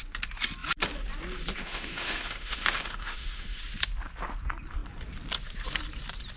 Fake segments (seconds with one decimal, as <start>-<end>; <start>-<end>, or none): 1.6-3.6